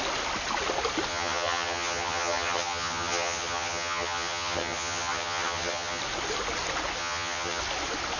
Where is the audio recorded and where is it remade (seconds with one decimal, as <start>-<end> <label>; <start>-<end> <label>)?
0.0-1.1 recorded; 1.1-6.0 remade; 6.0-7.0 recorded; 7.0-7.6 remade; 7.6-8.2 recorded